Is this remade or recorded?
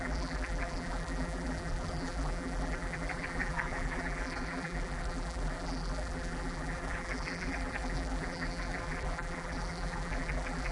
remade